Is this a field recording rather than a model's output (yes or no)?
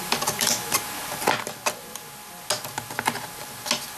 yes